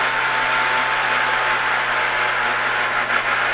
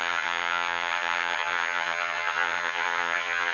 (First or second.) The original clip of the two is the first